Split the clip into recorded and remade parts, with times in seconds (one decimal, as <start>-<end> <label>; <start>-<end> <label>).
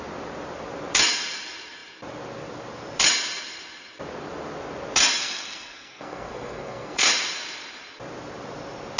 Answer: 0.0-5.2 recorded; 5.2-7.1 remade; 7.1-9.0 recorded